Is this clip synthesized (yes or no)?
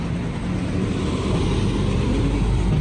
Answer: no